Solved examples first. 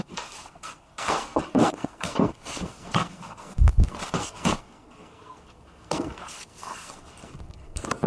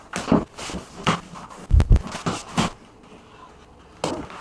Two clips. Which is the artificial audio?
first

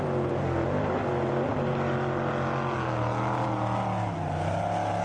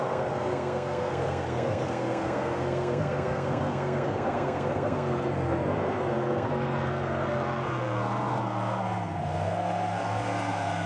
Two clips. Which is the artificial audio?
second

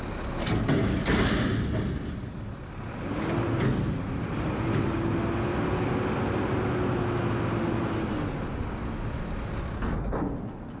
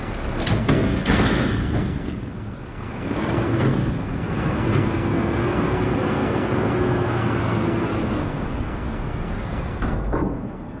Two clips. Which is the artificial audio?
second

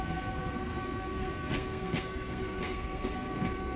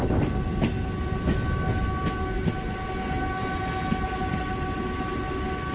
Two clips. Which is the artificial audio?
first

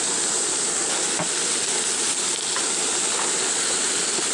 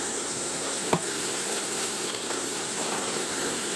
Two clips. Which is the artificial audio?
second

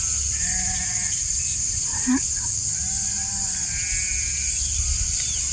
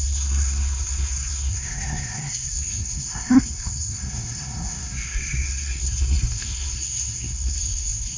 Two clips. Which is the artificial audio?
second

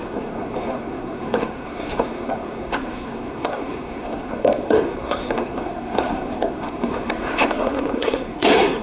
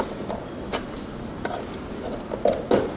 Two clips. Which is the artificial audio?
first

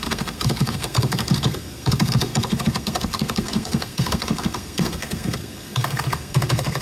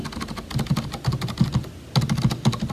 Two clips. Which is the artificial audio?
first